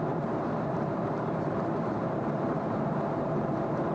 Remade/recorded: remade